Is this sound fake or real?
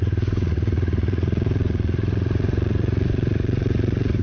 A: fake